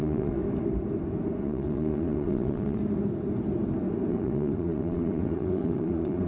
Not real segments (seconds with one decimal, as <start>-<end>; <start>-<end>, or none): 0.0-0.4; 1.4-2.8; 4.1-6.3